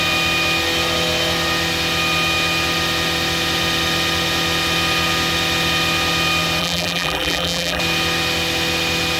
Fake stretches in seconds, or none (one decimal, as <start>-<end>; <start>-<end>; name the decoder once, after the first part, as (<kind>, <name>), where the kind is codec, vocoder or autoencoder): 6.6-7.8 (vocoder, BigVGAN v2)

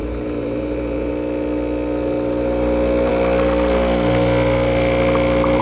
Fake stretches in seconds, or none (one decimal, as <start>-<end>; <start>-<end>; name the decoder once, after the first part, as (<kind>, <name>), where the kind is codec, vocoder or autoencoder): 0.0-1.1 (vocoder, BigVGAN v2)

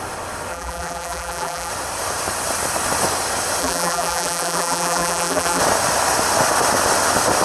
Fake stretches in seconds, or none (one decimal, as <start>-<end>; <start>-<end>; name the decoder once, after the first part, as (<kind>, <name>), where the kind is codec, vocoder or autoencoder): 0.5-1.7 (vocoder, BigVGAN v2); 3.6-5.6

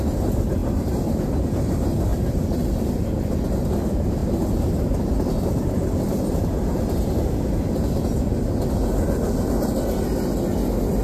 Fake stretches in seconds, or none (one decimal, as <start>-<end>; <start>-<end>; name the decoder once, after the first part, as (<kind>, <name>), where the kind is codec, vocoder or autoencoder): 2.1-2.8 (vocoder, BigVGAN v2)

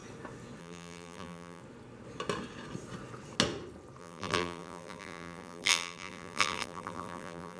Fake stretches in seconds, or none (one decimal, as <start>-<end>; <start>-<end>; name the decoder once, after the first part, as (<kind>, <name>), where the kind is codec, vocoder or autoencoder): 0.6-1.6 (vocoder, BigVGAN v2); 4.0-7.6

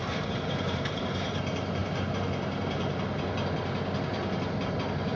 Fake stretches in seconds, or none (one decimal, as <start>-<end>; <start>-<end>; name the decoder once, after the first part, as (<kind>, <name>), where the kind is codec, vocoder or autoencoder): 0.0-1.0 (vocoder, BigVGAN v2)

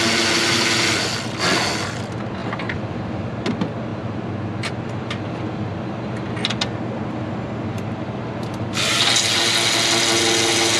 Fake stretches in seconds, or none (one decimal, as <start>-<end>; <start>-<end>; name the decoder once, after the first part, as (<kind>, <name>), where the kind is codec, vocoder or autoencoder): 2.4-3.3 (vocoder, BigVGAN v2)

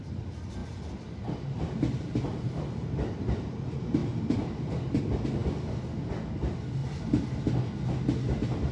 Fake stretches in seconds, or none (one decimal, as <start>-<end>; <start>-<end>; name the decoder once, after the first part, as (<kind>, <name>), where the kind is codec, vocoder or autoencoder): 4.0-5.0 (vocoder, BigVGAN v2); 5.4-6.1